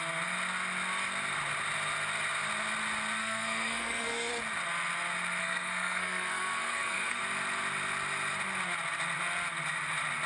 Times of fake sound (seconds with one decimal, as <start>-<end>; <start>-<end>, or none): 3.2-4.3; 5.4-7.2